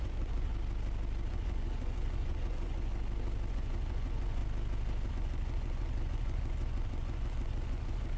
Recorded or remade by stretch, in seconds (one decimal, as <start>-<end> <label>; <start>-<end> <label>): 0.0-0.5 remade; 0.5-1.3 recorded; 1.3-2.9 remade; 2.9-3.5 recorded; 3.5-4.4 remade; 4.4-5.1 recorded; 5.1-8.2 remade